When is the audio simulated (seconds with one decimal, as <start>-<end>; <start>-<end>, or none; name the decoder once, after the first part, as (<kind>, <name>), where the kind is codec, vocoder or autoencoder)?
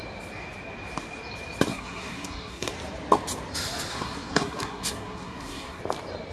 1.7-2.7 (codec, SNAC); 3.9-5.8